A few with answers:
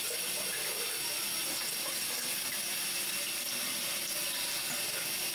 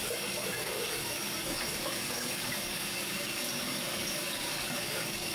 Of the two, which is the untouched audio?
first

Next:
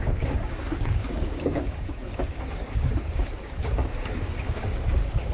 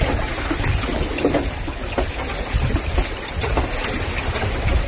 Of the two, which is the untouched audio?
second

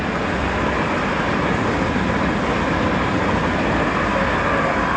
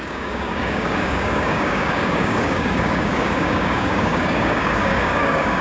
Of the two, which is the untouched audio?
first